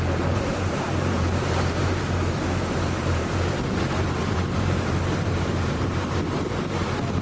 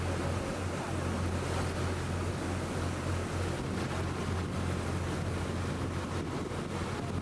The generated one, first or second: first